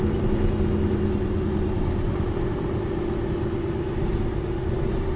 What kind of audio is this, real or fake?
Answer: real